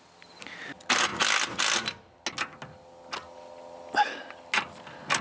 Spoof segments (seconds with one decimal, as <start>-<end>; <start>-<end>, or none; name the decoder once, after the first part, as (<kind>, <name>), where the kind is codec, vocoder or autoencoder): none